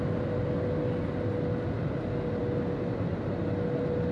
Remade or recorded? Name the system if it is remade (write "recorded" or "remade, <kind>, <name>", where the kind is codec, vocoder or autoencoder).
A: recorded